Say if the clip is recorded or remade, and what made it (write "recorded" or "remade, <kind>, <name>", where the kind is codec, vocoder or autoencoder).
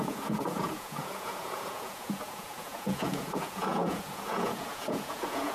remade, vocoder, Vocos